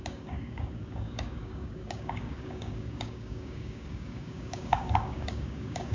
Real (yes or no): no